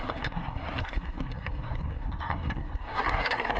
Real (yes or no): no